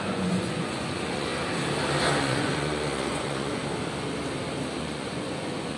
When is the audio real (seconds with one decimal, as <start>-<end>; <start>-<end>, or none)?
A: 1.3-2.2; 3.6-4.8